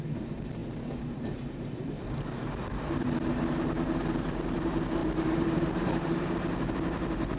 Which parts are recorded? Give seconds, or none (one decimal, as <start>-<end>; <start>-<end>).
none